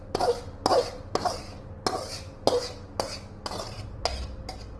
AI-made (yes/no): no